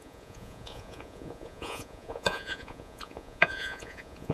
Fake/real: fake